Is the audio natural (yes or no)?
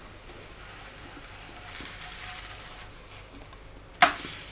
yes